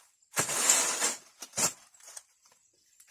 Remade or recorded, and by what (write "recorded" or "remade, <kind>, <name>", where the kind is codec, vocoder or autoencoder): remade, vocoder, BigVGAN v2